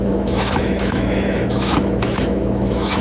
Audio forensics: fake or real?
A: fake